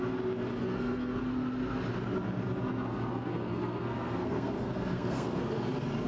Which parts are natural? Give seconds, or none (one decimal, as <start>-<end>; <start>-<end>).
0.0-0.6; 1.2-3.1; 5.4-6.1